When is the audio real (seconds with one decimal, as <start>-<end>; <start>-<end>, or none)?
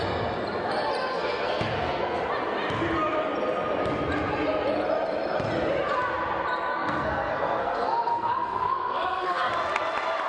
0.0-1.1; 2.2-6.7; 9.5-10.3